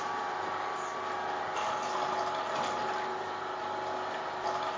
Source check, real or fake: real